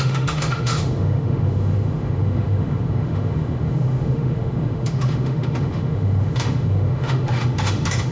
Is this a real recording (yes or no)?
no